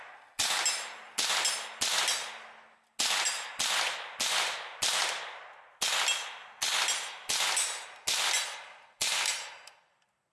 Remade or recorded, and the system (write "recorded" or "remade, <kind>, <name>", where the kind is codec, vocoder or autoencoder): recorded